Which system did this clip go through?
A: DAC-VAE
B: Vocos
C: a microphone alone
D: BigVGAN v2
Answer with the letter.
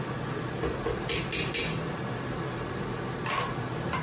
D